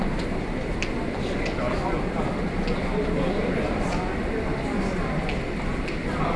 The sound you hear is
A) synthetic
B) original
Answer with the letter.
B